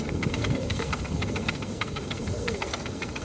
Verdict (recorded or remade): remade